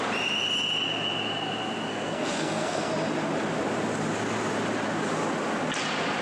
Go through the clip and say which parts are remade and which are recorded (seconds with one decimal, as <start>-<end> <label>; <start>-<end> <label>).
0.0-1.9 recorded; 1.9-2.9 remade; 2.9-6.2 recorded